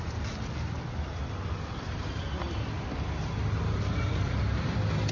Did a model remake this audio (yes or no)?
no